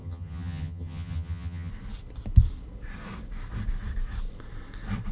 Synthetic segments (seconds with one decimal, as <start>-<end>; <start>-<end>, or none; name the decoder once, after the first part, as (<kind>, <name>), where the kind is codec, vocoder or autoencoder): 0.0-1.7 (vocoder, HiFi-GAN)